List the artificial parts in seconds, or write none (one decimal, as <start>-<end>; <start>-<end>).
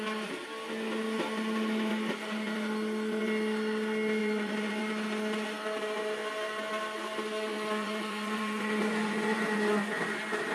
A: 4.2-4.8; 7.5-10.0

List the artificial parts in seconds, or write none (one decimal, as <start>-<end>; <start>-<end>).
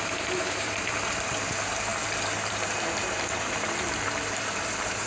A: 0.0-1.9; 2.5-5.1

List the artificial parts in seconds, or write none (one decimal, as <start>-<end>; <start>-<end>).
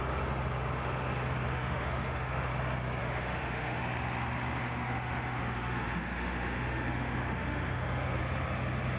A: 1.5-2.5; 3.0-3.8; 4.6-8.2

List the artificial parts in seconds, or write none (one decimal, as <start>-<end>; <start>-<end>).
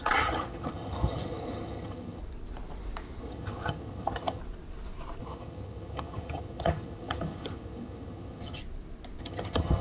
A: 0.0-2.2; 3.2-4.4; 5.2-8.6; 9.2-9.8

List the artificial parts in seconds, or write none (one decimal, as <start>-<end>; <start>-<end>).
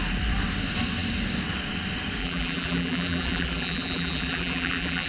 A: 2.2-5.1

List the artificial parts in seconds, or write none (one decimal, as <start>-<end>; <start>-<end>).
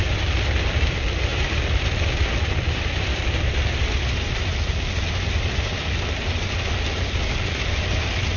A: 1.3-1.9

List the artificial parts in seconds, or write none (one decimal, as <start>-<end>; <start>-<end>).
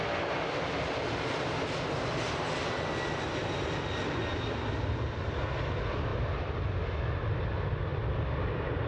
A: 6.1-6.8; 7.9-8.4